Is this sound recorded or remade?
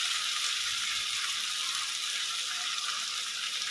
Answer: remade